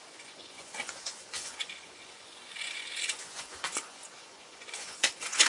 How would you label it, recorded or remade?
remade